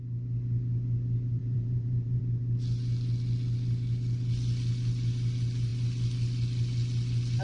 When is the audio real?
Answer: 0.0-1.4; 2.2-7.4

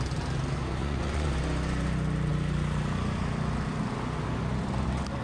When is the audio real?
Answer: 0.0-0.8; 1.3-5.2

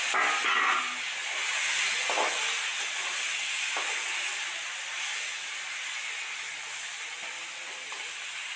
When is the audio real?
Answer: 0.0-8.6

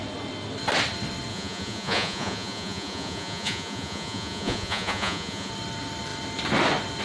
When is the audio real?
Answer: 0.0-1.3; 5.5-7.0

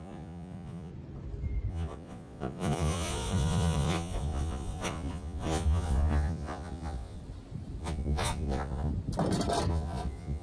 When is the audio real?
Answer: 0.9-1.7; 7.2-7.8; 8.9-9.7

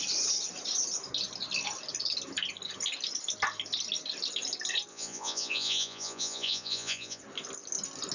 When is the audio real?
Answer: 0.0-4.9; 7.2-8.1

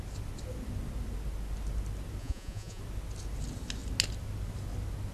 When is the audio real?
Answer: 0.0-2.2; 2.8-5.1

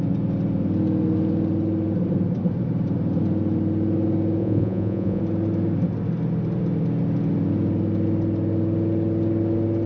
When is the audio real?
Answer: 0.0-4.4; 5.2-9.9